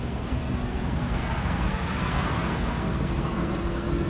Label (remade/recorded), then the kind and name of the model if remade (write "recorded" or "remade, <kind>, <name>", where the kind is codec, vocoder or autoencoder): remade, codec, SNAC